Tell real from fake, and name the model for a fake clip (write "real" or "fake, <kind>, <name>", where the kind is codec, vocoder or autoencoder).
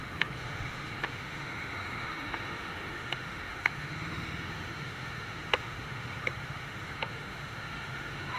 fake, autoencoder, DAC-VAE